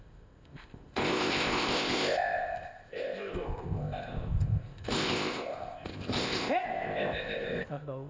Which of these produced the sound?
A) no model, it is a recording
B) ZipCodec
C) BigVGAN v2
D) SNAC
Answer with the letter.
B